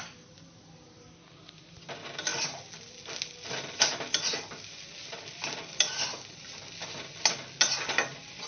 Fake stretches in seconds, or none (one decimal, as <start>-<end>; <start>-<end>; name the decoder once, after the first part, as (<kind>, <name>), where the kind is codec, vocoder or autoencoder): none